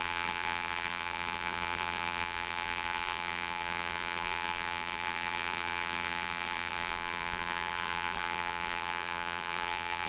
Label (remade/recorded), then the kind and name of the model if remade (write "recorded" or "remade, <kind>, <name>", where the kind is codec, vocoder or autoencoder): remade, vocoder, BigVGAN v2